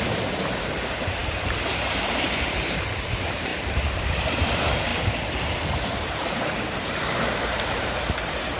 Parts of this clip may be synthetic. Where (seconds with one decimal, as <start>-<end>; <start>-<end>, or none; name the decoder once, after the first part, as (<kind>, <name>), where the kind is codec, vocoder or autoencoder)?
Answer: 0.0-3.5 (vocoder, BigVGAN v2); 4.0-8.6